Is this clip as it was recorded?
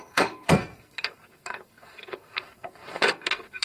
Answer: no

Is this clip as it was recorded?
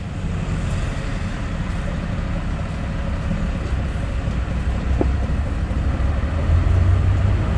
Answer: yes